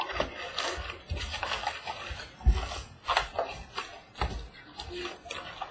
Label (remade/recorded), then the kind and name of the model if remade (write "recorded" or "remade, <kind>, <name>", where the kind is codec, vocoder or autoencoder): recorded